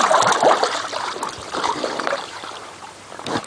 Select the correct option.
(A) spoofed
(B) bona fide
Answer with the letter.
A